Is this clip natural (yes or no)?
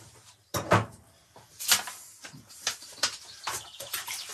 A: no